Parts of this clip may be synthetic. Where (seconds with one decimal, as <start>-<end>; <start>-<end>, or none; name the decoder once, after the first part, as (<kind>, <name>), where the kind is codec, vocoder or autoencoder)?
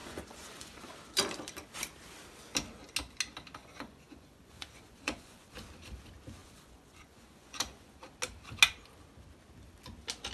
0.0-0.9 (vocoder, Vocos); 3.6-5.5; 6.4-8.0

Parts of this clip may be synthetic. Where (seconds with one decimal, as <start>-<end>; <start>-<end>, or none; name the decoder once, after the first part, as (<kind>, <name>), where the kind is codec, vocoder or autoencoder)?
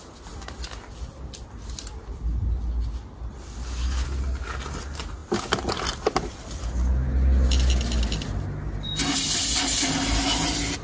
none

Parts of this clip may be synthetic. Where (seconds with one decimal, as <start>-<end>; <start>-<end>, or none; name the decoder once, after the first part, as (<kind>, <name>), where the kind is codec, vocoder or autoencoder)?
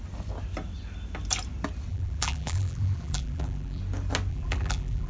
1.9-3.8 (vocoder, BigVGAN v2); 4.3-5.1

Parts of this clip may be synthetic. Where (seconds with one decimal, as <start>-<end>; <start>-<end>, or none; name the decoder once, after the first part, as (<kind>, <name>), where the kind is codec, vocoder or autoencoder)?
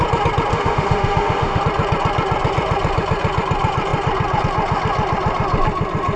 0.5-1.6 (autoencoder, DAC-VAE)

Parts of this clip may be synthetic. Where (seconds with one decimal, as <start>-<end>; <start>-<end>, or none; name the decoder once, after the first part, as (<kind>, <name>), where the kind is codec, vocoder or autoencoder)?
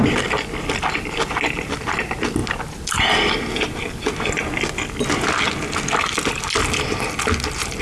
none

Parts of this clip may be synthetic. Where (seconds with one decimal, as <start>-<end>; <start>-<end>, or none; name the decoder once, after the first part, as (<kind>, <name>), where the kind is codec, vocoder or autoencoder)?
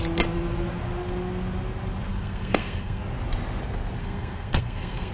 2.1-3.0 (codec, SNAC); 4.0-5.1